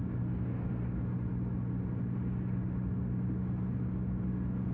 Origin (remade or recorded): recorded